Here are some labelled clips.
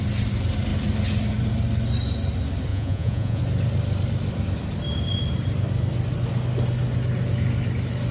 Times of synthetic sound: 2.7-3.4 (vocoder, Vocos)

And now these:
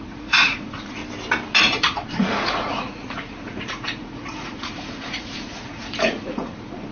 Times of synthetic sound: 0.0-1.0 (vocoder, Vocos); 1.6-6.9

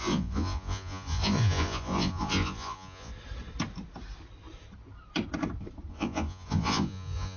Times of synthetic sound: 0.0-3.1 (vocoder, Vocos); 5.9-7.4

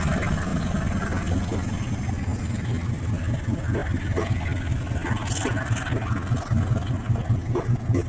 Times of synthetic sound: none

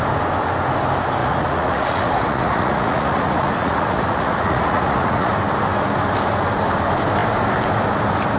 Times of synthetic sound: 1.2-5.3 (vocoder, Vocos)